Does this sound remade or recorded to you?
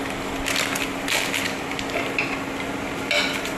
recorded